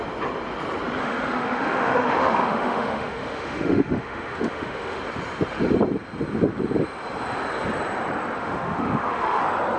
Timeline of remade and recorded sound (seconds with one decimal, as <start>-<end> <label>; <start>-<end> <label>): 0.0-1.0 recorded; 1.0-5.0 remade; 5.0-8.4 recorded; 8.4-9.4 remade; 9.4-9.8 recorded